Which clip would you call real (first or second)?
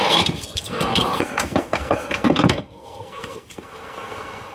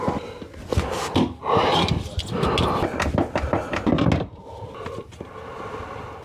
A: second